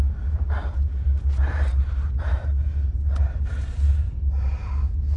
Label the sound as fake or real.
real